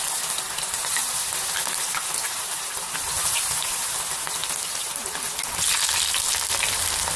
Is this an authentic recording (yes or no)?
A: yes